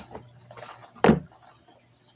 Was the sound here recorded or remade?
recorded